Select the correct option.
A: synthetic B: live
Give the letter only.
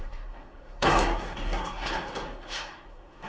A